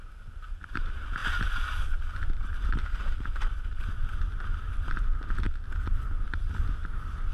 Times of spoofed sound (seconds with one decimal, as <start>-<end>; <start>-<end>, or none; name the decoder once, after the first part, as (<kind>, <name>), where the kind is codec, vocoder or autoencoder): none